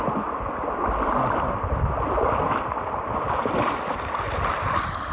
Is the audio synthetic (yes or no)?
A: no